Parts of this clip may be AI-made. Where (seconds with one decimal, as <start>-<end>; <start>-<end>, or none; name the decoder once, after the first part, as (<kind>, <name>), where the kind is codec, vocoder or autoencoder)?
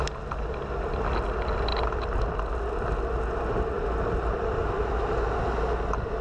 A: none